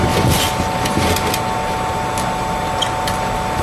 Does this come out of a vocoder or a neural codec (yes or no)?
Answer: no